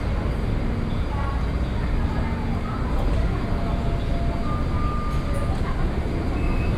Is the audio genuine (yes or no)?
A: yes